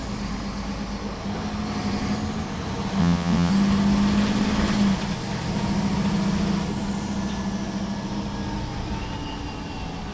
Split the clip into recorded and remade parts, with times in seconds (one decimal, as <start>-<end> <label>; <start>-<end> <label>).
0.0-3.0 recorded; 3.0-3.5 remade; 3.5-10.1 recorded